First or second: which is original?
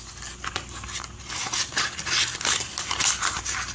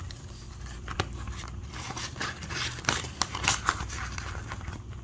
first